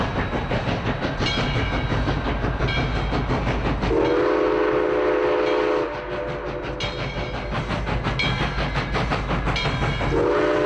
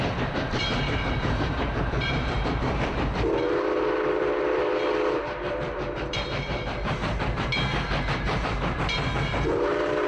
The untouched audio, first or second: first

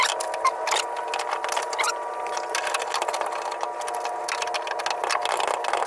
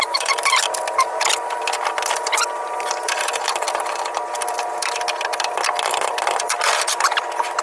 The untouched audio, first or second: first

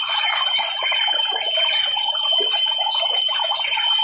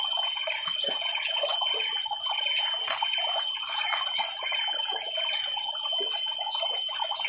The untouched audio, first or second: second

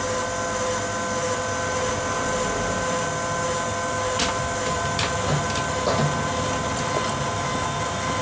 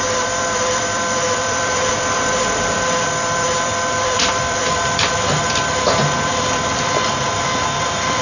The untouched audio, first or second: first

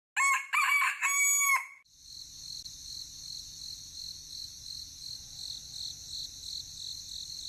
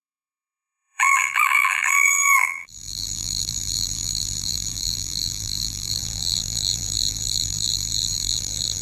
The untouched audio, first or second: first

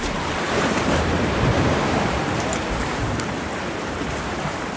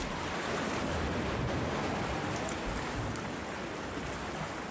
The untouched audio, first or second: second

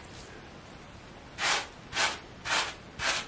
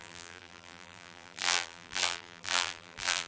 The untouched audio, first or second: first